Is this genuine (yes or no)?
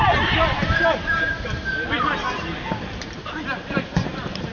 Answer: yes